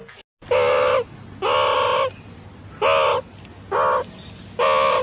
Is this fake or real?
real